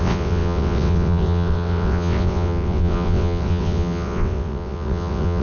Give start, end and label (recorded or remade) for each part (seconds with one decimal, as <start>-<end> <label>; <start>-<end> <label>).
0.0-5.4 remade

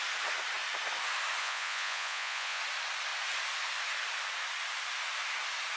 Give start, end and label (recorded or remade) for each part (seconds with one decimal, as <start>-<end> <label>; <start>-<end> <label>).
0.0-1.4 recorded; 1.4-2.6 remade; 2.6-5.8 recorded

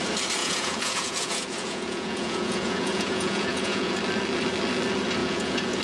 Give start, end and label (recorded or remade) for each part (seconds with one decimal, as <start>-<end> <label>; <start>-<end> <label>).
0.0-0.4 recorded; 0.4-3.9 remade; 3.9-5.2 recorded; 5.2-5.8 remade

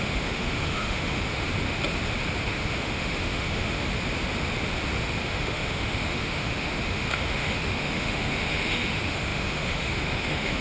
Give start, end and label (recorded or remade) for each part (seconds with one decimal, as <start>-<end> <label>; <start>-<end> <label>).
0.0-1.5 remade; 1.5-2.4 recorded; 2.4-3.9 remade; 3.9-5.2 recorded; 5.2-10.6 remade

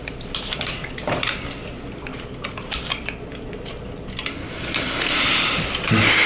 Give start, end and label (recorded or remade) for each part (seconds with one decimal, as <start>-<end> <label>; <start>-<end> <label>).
0.0-6.3 recorded

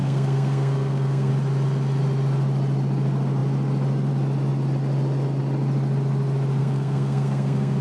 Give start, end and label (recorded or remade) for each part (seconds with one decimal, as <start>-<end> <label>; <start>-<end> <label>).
0.0-1.3 remade; 1.3-6.6 recorded; 6.6-7.8 remade